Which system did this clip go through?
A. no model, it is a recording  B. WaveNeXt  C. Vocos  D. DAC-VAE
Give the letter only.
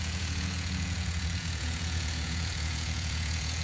C